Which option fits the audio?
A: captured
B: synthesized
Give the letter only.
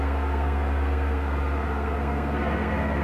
B